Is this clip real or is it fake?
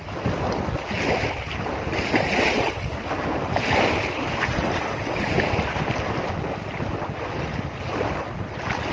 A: real